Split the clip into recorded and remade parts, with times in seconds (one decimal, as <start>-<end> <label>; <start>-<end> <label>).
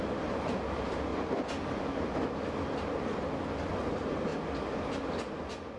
0.0-1.1 remade; 1.1-3.9 recorded; 3.9-4.3 remade; 4.3-5.8 recorded